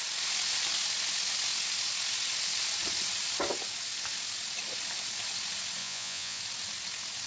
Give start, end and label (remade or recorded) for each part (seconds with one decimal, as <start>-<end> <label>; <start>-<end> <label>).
0.0-5.8 recorded; 5.8-6.4 remade; 6.4-7.3 recorded